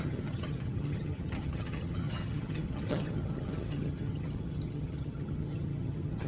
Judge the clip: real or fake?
fake